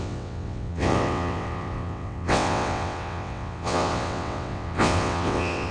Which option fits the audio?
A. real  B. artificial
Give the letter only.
B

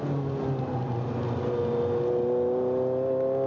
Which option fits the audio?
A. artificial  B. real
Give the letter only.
B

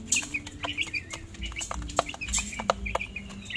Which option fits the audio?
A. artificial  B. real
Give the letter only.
B